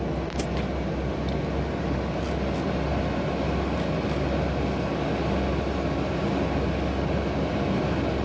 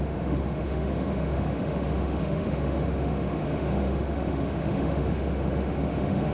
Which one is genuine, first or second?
first